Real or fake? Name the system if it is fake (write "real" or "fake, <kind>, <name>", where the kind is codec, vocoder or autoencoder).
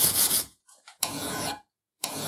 fake, vocoder, Vocos